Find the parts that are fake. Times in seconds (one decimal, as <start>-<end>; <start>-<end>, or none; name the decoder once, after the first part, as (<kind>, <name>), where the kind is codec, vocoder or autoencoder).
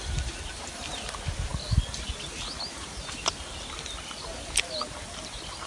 none